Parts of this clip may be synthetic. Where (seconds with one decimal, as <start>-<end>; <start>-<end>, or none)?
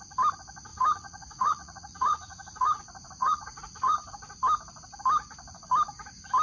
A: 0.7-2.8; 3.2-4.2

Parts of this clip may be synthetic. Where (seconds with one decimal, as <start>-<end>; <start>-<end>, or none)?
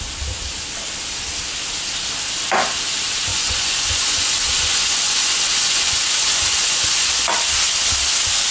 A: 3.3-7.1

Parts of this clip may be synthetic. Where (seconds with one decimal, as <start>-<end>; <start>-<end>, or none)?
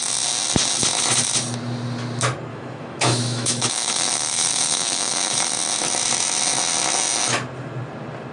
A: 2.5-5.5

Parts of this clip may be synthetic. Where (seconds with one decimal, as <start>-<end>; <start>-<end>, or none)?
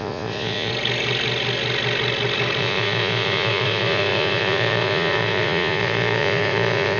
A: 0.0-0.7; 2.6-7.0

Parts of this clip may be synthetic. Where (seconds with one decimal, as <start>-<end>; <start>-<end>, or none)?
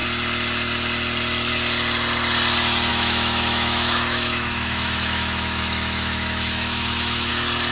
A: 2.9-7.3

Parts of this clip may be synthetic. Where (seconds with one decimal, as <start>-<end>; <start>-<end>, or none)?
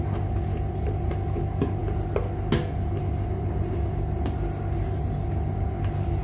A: none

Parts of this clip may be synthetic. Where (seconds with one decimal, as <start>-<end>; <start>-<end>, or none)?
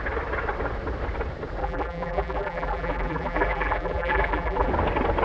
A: 1.6-4.7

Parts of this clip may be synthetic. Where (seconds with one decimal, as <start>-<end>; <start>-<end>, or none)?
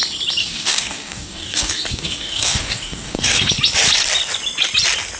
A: 0.4-3.5